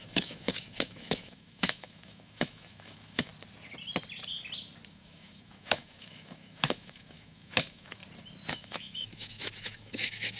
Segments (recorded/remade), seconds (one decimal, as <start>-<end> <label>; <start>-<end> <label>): 0.0-3.3 remade; 3.3-4.9 recorded; 4.9-8.0 remade; 8.0-8.5 recorded; 8.5-10.4 remade